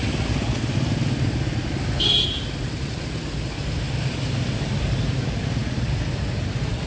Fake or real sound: real